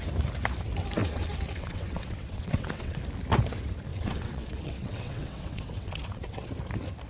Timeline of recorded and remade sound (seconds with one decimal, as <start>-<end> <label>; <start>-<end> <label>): 0.0-1.0 recorded; 1.0-3.0 remade; 3.0-3.9 recorded; 3.9-6.5 remade; 6.5-7.1 recorded